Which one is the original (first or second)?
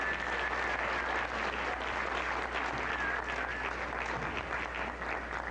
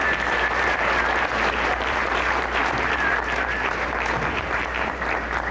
first